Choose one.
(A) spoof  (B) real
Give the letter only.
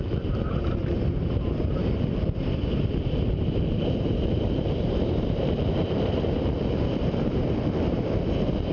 A